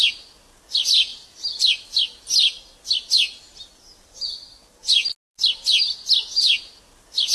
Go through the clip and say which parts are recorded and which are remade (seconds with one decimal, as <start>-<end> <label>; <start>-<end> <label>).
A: 0.0-7.3 recorded